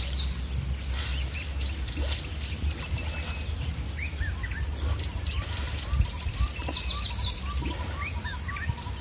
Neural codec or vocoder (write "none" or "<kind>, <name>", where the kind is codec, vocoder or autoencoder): none